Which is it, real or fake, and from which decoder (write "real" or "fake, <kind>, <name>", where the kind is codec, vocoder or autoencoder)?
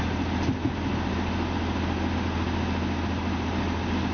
real